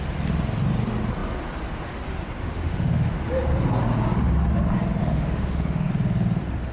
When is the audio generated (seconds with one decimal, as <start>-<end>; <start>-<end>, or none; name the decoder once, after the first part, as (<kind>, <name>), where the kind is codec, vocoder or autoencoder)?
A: 2.4-3.2 (autoencoder, DAC-VAE); 5.0-5.9